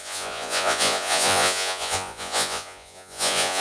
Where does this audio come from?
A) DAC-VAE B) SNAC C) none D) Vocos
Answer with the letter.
D